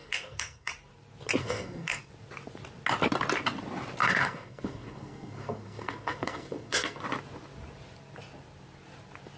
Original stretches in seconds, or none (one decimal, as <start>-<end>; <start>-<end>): 0.7-1.4; 2.1-4.0; 7.0-9.4